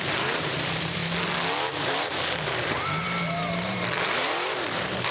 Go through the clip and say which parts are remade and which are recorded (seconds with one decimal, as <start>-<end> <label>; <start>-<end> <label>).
0.0-1.0 remade; 1.0-1.8 recorded; 1.8-5.1 remade